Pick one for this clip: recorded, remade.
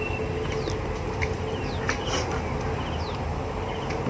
recorded